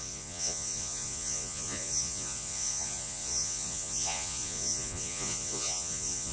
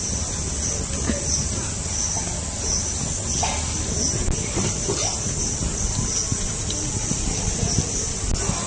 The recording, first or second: second